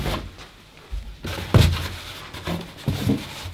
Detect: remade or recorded recorded